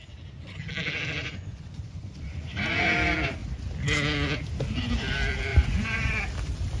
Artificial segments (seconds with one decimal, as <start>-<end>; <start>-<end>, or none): 1.2-2.9; 5.5-6.1

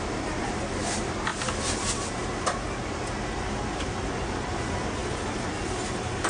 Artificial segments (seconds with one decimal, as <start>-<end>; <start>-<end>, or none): none

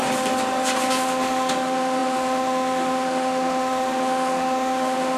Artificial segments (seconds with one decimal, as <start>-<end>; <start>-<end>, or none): 0.9-5.2

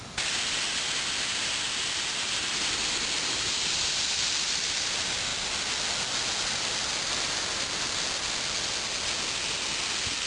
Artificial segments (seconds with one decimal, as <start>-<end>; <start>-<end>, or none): none

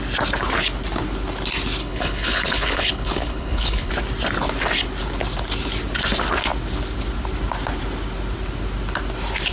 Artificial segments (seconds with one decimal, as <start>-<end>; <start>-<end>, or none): 1.8-3.9

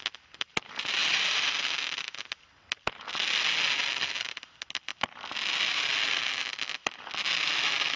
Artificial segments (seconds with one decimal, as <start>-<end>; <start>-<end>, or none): none